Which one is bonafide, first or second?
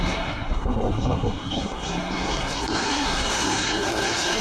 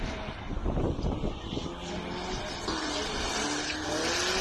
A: second